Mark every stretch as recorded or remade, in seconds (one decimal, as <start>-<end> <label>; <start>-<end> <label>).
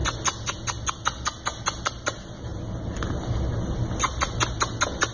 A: 0.0-5.1 recorded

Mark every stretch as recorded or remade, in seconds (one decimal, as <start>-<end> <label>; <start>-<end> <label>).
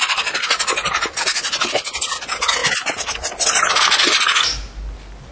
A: 0.0-5.3 recorded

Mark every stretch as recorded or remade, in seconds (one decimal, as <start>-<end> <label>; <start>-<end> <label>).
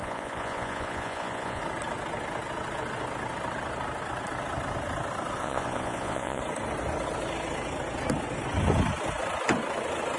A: 0.0-1.6 remade; 1.6-5.4 recorded; 5.4-6.4 remade; 6.4-10.2 recorded